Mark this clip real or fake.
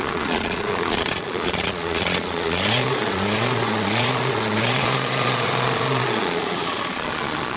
fake